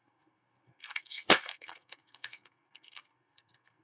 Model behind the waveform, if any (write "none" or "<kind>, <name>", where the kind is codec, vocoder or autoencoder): codec, SNAC